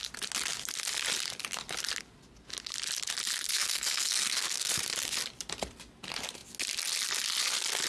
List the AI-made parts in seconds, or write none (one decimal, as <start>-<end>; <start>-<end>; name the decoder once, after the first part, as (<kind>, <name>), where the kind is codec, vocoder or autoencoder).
3.5-4.8 (codec, SNAC)